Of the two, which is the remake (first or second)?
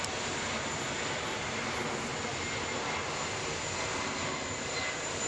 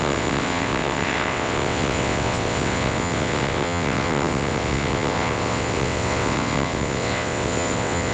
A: second